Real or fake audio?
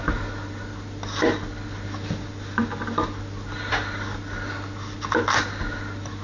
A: real